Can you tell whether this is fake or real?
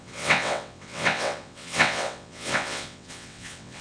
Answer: fake